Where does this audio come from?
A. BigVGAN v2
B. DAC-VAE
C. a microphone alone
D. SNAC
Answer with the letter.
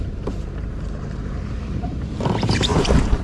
A